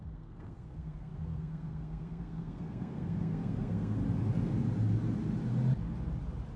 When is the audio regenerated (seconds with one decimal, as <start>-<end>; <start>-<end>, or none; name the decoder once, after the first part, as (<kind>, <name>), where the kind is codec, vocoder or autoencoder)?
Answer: 0.0-4.0 (codec, SNAC)